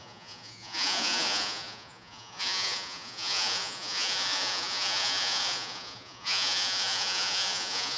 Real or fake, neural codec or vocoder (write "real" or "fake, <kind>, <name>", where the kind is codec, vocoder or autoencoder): fake, vocoder, Vocos